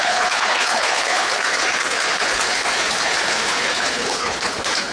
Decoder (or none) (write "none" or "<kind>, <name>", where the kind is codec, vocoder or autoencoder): codec, HILCodec